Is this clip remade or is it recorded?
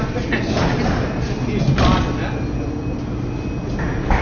recorded